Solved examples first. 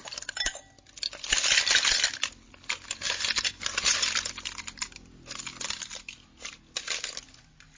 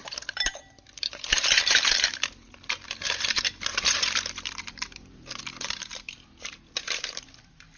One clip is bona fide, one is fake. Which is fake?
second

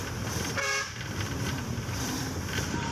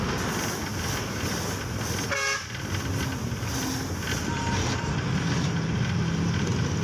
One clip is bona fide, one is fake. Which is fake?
first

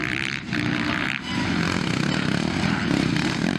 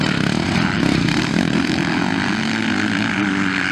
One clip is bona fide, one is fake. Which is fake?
first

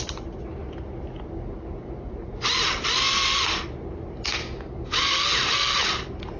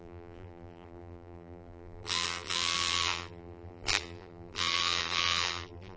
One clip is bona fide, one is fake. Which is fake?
second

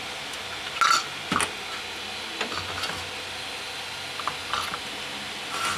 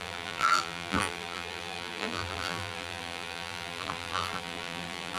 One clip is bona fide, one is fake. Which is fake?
second